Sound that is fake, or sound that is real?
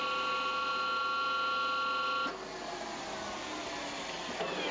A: real